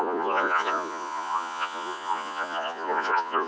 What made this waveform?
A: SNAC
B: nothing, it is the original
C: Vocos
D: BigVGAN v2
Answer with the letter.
C